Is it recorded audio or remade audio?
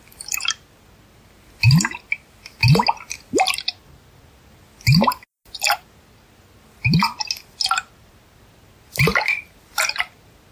recorded